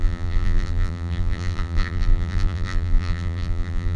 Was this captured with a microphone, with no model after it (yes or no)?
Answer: no